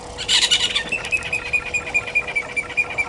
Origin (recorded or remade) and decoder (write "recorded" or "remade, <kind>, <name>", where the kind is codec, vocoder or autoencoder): recorded